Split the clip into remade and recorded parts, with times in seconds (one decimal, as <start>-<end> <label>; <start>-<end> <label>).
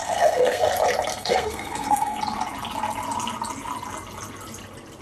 0.0-0.7 remade; 0.7-1.1 recorded; 1.1-2.2 remade; 2.2-5.0 recorded